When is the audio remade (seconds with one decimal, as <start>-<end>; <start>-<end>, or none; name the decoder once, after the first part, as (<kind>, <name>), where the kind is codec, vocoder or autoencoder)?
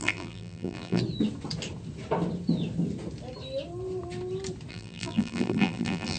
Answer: 0.0-1.0 (vocoder, BigVGAN v2); 4.7-6.2